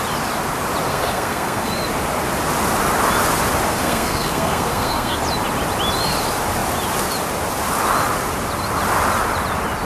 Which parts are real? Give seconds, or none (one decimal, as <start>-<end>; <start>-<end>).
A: 0.0-0.9; 1.7-3.7; 5.2-9.9